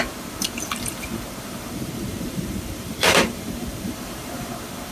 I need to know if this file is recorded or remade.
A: remade